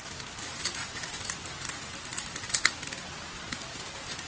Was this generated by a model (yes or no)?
no